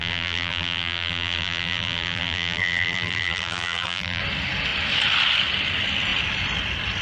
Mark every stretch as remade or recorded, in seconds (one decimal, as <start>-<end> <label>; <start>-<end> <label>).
0.0-4.2 remade; 4.2-7.0 recorded

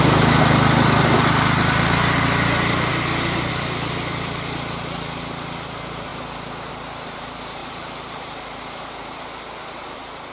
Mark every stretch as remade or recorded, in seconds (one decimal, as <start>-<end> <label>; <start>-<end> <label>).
0.0-7.6 recorded; 7.6-8.3 remade; 8.3-10.3 recorded

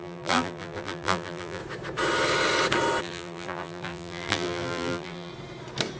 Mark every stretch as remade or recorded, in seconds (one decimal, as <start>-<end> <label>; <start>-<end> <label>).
0.0-1.6 remade; 1.6-3.0 recorded; 3.0-5.3 remade; 5.3-6.0 recorded

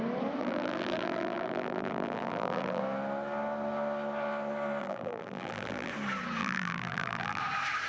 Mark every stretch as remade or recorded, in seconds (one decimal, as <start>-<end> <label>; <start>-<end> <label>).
0.0-0.4 recorded; 0.4-2.8 remade; 2.8-4.8 recorded; 4.8-5.9 remade; 5.9-6.4 recorded; 6.4-7.4 remade; 7.4-7.9 recorded